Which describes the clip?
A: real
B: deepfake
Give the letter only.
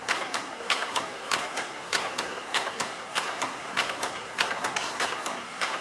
B